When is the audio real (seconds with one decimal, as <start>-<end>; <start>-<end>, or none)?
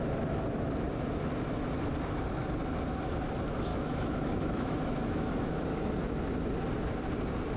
0.0-3.7; 5.9-7.6